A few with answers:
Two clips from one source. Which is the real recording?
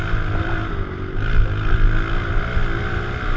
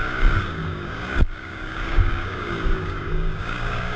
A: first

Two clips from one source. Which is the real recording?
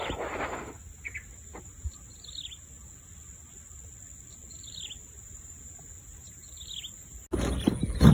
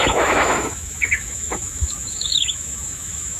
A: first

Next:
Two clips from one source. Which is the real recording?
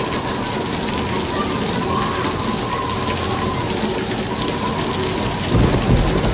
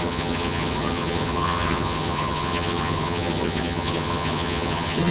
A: first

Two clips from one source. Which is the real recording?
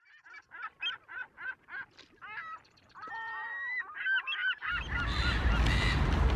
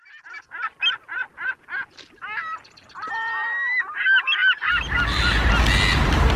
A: second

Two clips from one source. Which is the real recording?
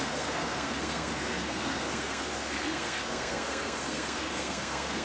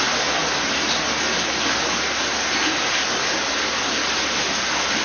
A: second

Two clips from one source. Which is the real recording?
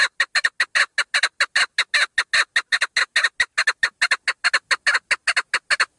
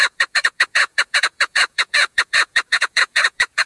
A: first